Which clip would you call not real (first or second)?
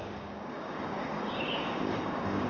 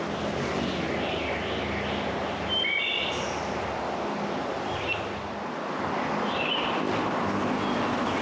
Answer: first